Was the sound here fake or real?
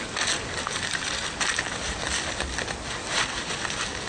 real